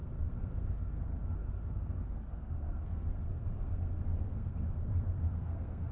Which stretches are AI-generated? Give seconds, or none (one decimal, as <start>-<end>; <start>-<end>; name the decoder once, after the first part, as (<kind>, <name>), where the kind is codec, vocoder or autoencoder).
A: 0.0-5.9 (codec, SNAC)